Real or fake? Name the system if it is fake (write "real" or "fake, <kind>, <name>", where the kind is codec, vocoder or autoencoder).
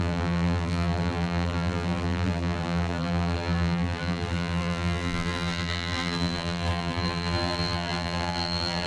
fake, vocoder, BigVGAN v2